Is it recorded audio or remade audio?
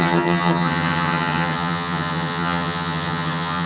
remade